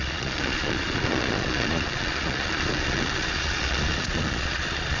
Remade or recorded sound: remade